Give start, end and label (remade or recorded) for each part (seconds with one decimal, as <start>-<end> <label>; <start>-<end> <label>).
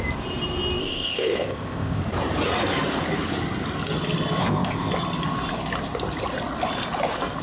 0.0-0.8 recorded; 0.8-2.0 remade; 2.0-4.4 recorded; 4.4-4.9 remade; 4.9-7.4 recorded